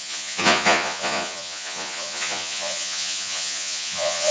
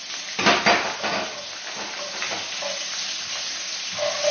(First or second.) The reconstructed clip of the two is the first